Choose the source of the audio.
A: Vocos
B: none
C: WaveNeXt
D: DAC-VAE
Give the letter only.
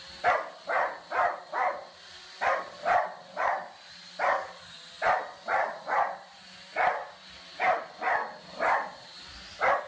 B